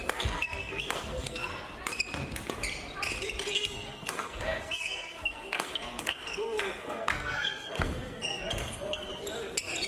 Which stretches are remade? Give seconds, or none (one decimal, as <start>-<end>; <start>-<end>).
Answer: 0.0-1.5; 3.5-9.1

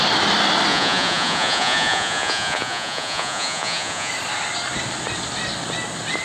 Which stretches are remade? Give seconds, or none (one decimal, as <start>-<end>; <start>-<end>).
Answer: 0.7-4.1

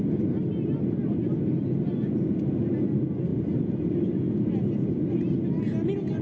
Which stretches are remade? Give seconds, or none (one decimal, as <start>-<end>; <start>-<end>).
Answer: none

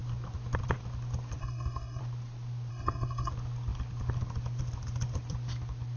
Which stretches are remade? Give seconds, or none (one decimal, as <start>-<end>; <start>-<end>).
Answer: 1.4-2.0; 2.7-3.3

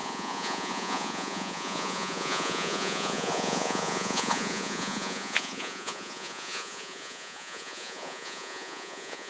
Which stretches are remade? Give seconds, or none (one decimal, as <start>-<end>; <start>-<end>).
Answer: 0.0-9.3

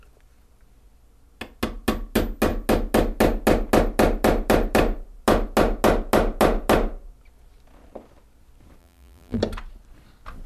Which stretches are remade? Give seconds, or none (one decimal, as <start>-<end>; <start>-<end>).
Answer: 8.8-9.4

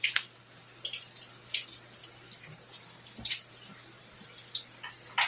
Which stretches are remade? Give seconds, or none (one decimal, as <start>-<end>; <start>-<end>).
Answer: none